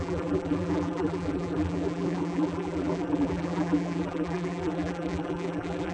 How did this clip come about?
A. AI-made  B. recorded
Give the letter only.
A